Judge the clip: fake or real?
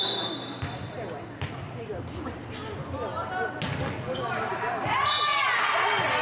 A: real